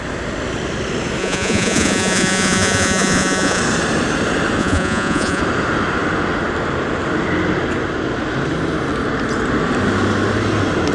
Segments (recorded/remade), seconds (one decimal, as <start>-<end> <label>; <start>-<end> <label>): 0.0-1.2 recorded; 1.2-3.6 remade; 3.6-4.6 recorded; 4.6-5.4 remade; 5.4-10.9 recorded